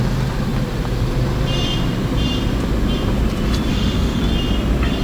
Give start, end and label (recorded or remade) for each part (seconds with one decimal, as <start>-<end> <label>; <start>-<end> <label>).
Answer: 0.0-3.7 recorded; 3.7-4.2 remade; 4.2-5.0 recorded